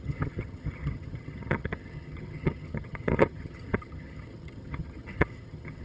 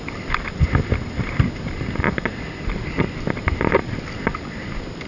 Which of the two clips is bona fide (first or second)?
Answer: second